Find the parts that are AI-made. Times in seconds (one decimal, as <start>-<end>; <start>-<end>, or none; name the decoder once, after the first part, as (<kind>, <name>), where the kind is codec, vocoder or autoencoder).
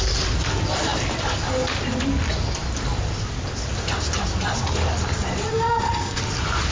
5.5-6.2 (codec, SNAC)